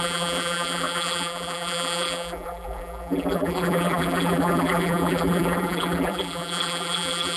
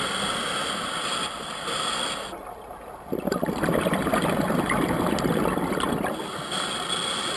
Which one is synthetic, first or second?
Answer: first